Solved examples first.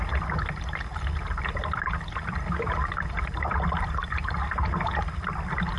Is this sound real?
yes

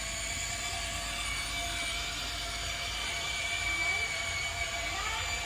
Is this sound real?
yes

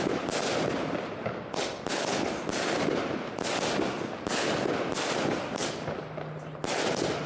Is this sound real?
yes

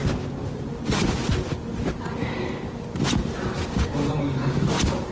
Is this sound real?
yes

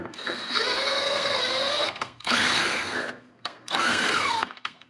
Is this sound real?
no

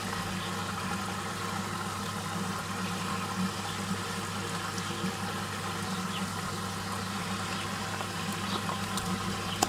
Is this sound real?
yes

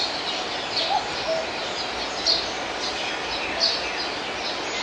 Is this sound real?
yes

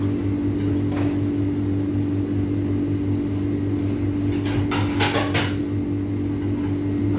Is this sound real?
yes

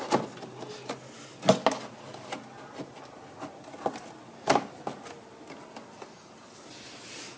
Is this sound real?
yes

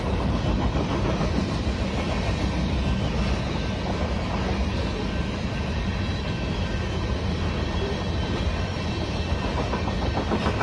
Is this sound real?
yes